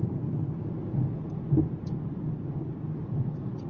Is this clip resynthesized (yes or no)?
no